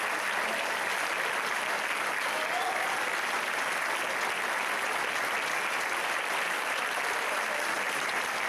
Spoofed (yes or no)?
no